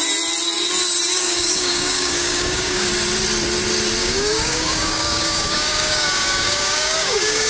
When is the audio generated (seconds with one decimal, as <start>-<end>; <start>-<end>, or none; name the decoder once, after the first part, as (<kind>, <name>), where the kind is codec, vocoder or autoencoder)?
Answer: 1.1-2.9 (codec, DAC); 4.0-7.5